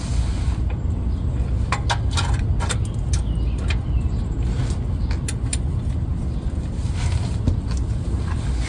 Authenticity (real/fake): real